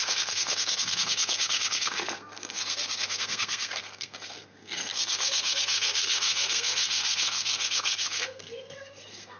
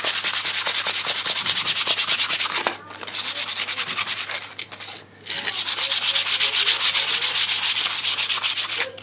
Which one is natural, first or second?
second